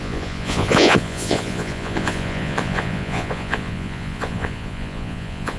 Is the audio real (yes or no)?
no